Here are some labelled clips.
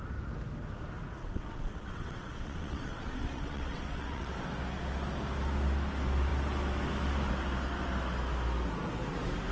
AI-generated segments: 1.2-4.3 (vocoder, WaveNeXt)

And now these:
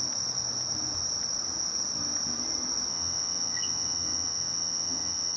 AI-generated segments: 2.9-5.4 (vocoder, WaveNeXt)